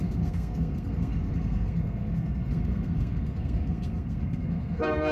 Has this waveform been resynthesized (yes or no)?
yes